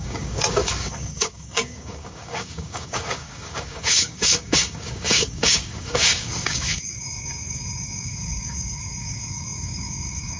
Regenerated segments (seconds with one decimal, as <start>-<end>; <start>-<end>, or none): 0.0-10.4